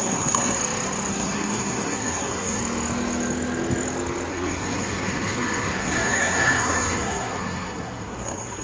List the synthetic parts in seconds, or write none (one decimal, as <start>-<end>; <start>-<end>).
0.0-0.6; 1.1-2.6; 4.3-8.6